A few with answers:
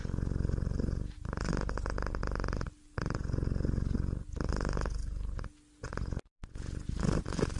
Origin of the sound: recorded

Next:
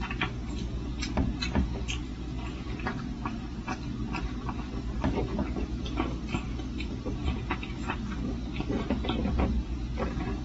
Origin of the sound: recorded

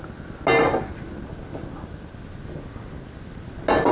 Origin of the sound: recorded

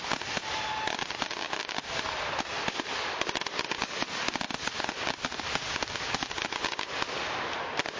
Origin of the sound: recorded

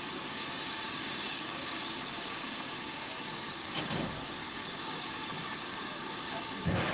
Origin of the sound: remade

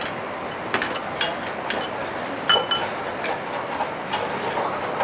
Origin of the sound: recorded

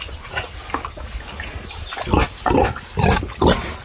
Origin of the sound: recorded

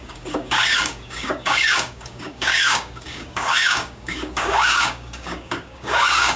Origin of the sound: remade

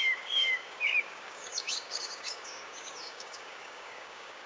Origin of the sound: remade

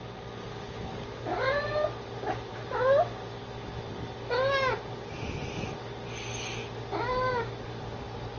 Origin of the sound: recorded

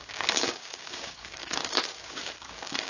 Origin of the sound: remade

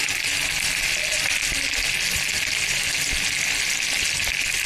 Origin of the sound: recorded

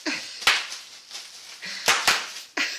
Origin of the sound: recorded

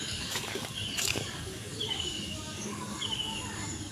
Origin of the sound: remade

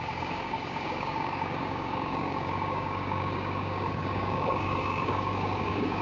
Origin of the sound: remade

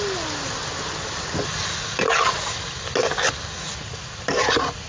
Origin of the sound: recorded